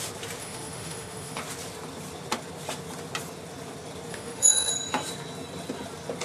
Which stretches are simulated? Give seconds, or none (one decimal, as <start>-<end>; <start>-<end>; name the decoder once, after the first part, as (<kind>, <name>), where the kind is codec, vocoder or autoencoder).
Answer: 0.4-1.4 (autoencoder, DAC-VAE); 4.1-4.7